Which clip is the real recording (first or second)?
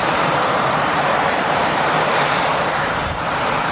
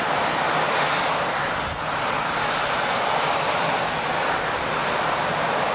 second